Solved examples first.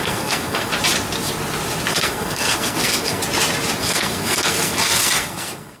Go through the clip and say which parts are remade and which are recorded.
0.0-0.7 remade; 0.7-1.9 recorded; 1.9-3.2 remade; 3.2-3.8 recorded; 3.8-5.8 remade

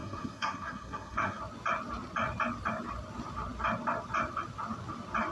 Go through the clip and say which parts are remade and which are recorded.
0.0-1.4 remade; 1.4-5.3 recorded

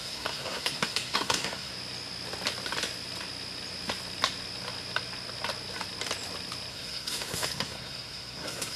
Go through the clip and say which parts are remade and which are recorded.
0.0-1.7 remade; 1.7-6.7 recorded; 6.7-8.8 remade